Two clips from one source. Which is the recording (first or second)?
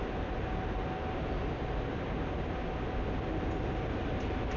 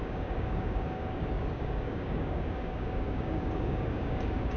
first